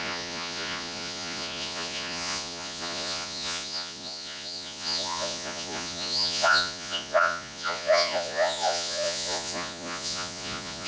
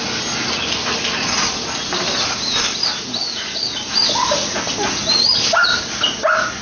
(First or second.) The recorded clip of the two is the second